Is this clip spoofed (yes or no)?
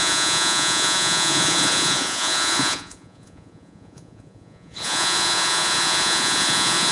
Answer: yes